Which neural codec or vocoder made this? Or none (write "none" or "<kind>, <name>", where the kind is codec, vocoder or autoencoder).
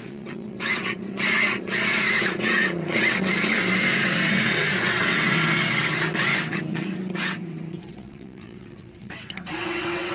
vocoder, WaveNeXt